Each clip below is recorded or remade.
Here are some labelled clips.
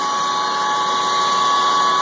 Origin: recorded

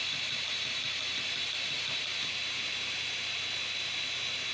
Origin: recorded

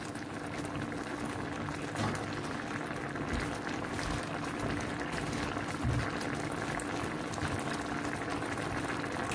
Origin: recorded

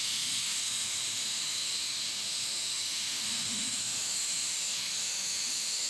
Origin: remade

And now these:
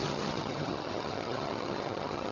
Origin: remade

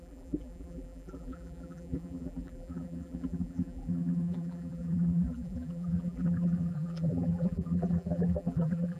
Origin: remade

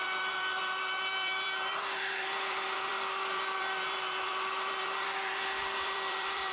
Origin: remade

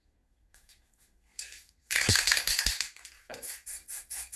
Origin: remade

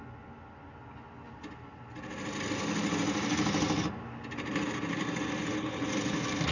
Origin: recorded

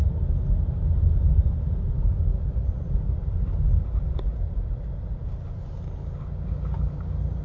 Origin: recorded